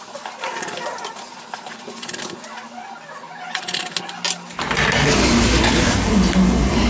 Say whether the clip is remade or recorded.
recorded